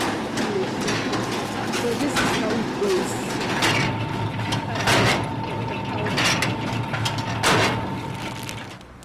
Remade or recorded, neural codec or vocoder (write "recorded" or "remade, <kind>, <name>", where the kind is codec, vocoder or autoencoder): recorded